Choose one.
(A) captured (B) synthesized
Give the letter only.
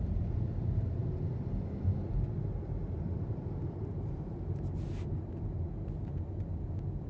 A